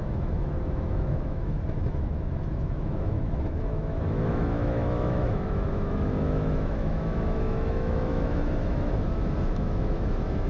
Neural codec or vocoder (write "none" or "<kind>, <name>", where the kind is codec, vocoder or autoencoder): autoencoder, DAC-VAE